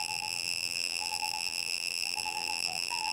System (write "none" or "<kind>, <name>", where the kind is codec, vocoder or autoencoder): vocoder, BigVGAN v2